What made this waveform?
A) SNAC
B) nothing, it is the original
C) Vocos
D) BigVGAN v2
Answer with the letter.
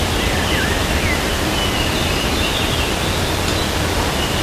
B